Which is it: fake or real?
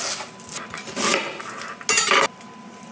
real